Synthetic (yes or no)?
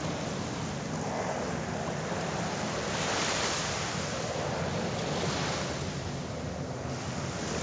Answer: no